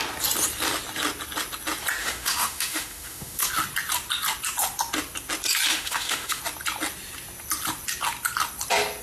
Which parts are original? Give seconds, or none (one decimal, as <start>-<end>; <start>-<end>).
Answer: 0.0-2.0; 3.5-5.7; 6.4-9.0